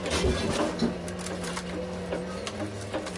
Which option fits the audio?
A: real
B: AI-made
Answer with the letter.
A